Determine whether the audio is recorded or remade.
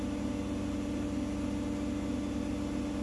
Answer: recorded